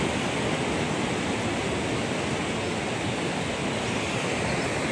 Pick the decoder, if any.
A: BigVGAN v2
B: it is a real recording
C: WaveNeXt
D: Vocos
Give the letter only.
B